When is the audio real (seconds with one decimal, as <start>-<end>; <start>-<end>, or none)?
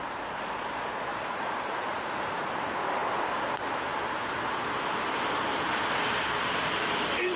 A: 0.0-1.1; 2.5-7.4